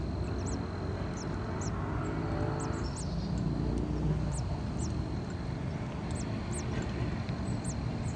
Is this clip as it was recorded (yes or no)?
yes